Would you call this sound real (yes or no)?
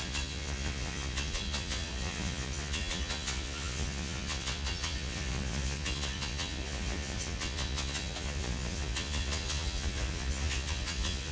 no